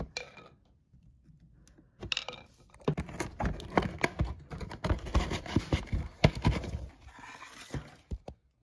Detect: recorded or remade recorded